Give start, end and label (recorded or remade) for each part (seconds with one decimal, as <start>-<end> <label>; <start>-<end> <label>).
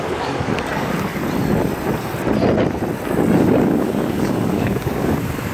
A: 0.0-1.2 remade; 1.2-3.4 recorded; 3.4-5.5 remade